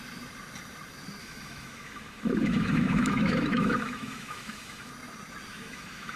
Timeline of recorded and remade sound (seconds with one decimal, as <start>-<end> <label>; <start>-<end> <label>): 0.0-1.2 recorded; 1.2-4.9 remade; 4.9-5.5 recorded; 5.5-6.2 remade